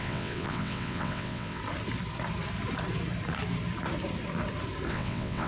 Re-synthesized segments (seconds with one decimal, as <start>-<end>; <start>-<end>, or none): 0.0-1.6; 4.9-5.5